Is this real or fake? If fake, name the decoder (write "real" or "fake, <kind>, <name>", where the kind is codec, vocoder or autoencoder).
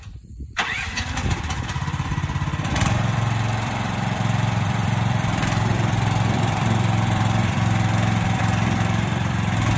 fake, vocoder, BigVGAN v2